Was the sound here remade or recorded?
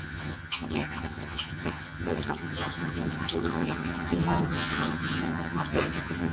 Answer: remade